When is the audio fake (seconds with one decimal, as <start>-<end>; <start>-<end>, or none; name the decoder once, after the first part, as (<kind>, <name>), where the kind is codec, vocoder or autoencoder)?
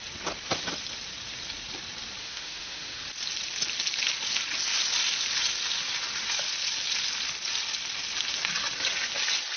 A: 2.2-3.0 (autoencoder, DAC-VAE)